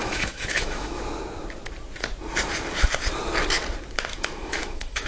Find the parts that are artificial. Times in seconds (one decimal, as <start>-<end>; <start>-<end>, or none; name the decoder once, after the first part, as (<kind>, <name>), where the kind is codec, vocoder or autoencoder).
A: 0.0-1.0 (autoencoder, DAC-VAE); 4.1-5.1

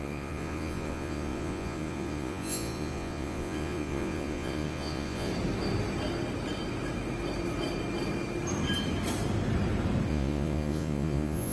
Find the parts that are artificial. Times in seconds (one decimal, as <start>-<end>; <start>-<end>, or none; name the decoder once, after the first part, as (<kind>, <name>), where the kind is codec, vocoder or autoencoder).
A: 0.0-5.3 (vocoder, Vocos); 10.1-11.5